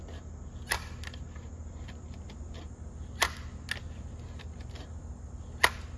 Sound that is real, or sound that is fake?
real